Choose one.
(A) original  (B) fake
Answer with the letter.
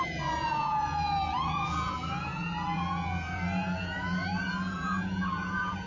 B